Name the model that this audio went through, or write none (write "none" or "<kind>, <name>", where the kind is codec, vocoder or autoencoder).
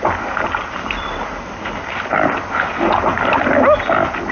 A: none